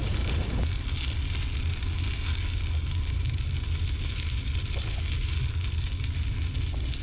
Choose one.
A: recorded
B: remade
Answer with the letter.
A